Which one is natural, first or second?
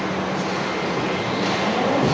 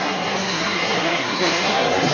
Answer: first